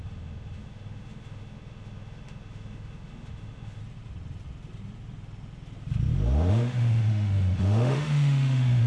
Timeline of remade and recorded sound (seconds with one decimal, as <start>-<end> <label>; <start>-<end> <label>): 0.0-3.8 remade; 3.8-6.5 recorded; 6.5-8.9 remade